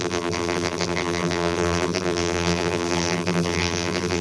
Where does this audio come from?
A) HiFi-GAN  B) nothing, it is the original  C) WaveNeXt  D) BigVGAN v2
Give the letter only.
D